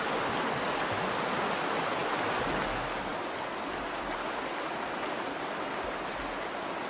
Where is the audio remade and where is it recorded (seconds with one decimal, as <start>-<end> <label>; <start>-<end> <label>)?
0.0-6.9 recorded